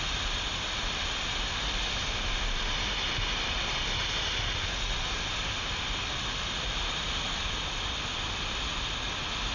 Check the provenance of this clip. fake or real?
real